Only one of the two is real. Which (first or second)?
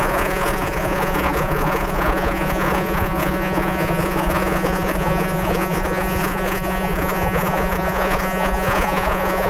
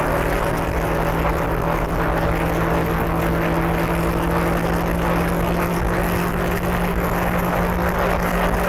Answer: second